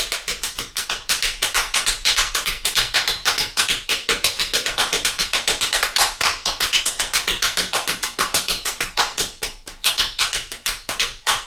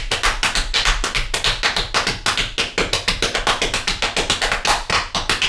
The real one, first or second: second